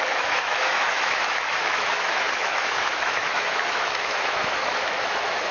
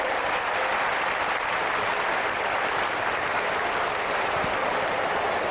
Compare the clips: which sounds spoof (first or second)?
first